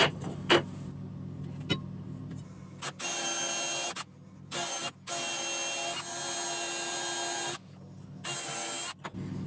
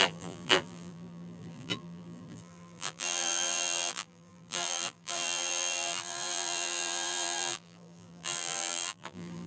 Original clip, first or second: first